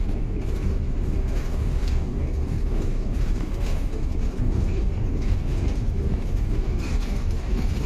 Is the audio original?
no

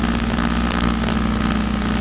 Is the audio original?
yes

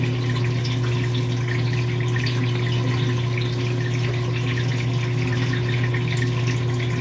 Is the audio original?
yes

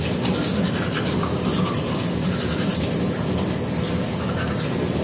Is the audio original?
yes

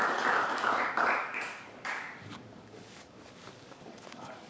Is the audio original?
no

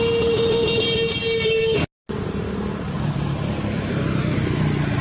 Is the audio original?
yes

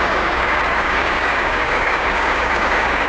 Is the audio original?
no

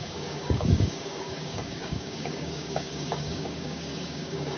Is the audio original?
no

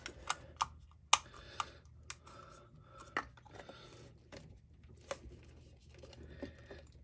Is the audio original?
yes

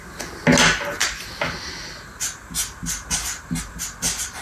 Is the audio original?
yes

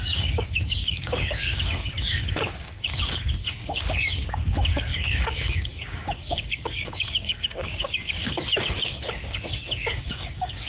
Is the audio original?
no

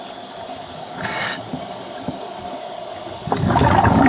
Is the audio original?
no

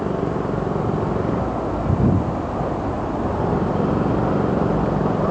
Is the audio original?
yes